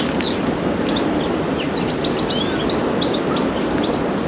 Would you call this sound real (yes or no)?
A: yes